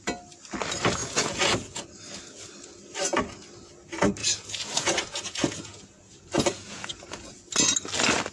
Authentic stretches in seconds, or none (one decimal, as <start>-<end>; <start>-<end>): 0.0-1.0; 2.0-4.2; 7.5-8.3